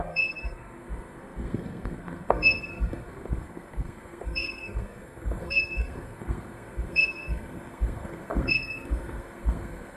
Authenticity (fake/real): fake